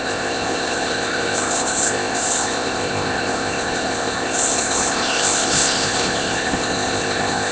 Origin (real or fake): fake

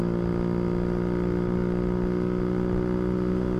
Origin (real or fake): real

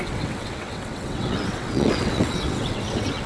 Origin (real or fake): fake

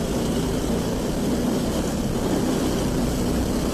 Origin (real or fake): real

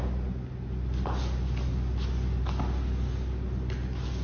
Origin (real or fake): real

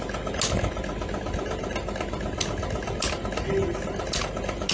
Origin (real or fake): real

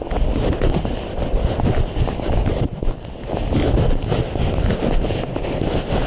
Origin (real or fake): real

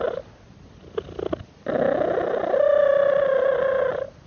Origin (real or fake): real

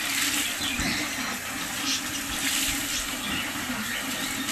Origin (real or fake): real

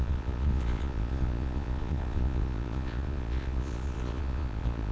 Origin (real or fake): fake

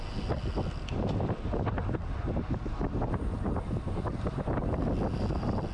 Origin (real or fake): real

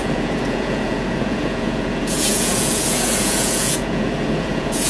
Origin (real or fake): fake